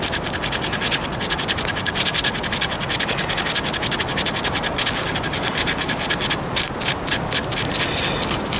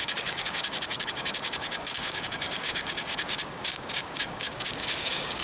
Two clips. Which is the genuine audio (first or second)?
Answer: first